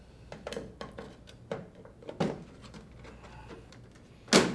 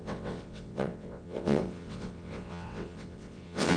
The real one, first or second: first